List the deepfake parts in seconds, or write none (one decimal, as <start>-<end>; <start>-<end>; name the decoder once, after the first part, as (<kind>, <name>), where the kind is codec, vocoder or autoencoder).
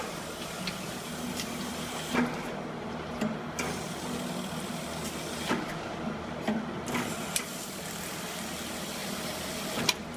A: 9.0-9.6 (vocoder, BigVGAN v2)